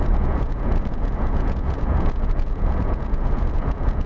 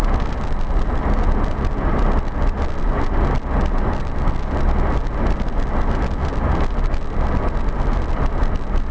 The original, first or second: second